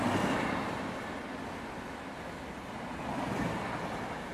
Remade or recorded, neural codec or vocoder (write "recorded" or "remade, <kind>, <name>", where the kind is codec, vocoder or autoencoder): recorded